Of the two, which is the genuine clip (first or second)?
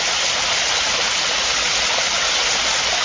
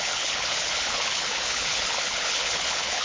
first